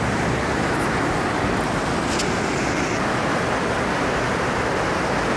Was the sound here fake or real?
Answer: real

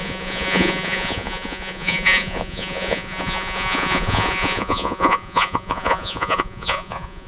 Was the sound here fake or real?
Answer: fake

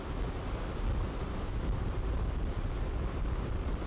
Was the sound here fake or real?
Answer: real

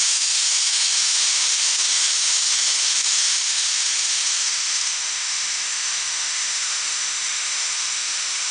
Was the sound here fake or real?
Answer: fake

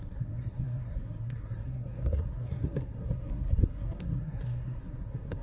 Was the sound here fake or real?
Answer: fake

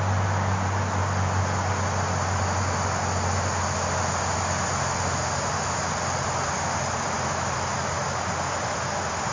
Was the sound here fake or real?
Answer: real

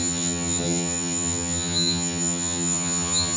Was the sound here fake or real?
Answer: fake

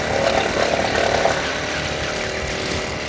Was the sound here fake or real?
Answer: real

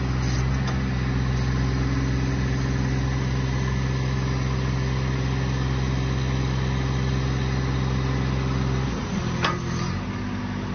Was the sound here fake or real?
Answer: real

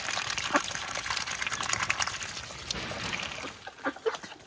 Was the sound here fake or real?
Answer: real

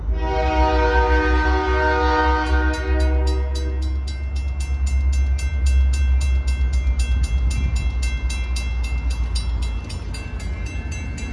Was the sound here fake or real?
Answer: real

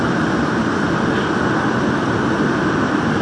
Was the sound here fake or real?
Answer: real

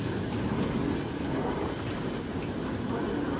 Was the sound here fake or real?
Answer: real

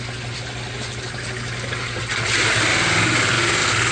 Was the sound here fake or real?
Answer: real